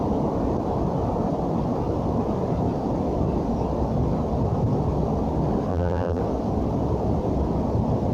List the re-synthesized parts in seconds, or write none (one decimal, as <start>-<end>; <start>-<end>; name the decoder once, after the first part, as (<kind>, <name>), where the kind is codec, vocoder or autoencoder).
5.7-6.2 (vocoder, BigVGAN v2)

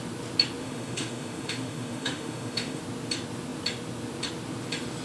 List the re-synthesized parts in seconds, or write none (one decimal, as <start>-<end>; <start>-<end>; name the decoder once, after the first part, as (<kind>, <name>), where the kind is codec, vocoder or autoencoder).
0.6-2.8 (autoencoder, DAC-VAE)